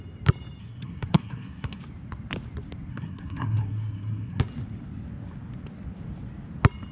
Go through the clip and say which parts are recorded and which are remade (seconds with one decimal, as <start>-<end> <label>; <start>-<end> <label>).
0.0-0.6 recorded; 0.6-1.8 remade; 1.8-2.9 recorded; 2.9-4.4 remade; 4.4-6.9 recorded